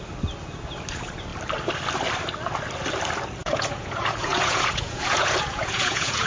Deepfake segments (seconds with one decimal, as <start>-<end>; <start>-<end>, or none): 3.4-6.3